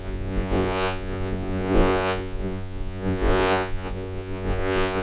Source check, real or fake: fake